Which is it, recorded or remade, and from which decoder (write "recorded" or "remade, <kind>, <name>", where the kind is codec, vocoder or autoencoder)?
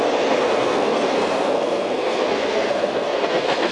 remade, codec, SNAC